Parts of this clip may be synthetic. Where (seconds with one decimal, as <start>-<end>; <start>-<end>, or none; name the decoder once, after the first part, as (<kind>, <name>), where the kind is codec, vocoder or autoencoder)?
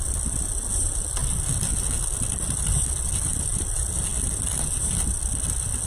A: none